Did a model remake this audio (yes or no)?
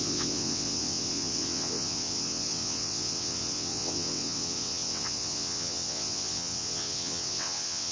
yes